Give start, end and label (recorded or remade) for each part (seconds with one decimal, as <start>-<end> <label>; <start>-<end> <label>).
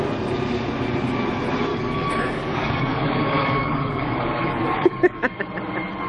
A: 0.0-1.7 recorded; 1.7-5.4 remade; 5.4-6.1 recorded